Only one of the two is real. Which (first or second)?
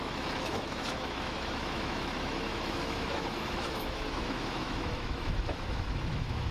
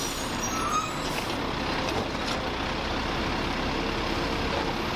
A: second